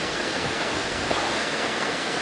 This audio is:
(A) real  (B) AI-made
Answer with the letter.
B